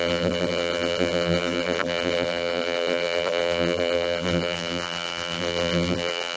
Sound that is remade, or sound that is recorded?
remade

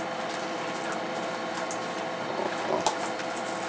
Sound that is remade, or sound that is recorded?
recorded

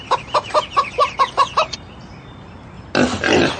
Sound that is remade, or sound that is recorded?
recorded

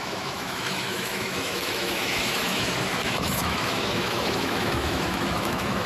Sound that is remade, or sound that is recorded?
remade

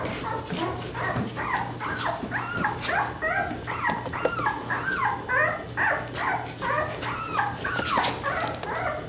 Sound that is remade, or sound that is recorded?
recorded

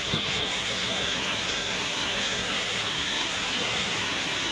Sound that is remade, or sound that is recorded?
remade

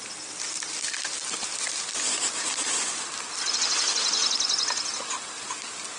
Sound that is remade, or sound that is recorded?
recorded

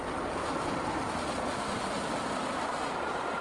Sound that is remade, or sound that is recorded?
recorded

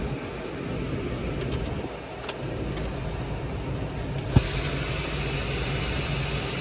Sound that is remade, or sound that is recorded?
recorded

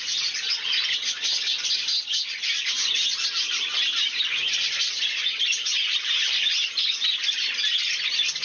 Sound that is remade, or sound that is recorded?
recorded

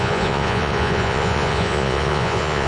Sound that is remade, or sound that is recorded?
remade